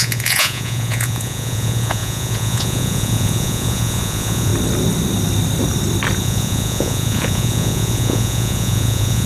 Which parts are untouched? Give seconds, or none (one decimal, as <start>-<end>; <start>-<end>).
4.5-6.2